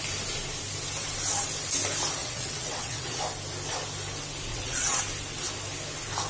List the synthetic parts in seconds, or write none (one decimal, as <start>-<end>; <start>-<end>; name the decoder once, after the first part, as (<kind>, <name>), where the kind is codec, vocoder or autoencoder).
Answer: 2.2-3.2 (vocoder, WaveNeXt); 4.5-5.0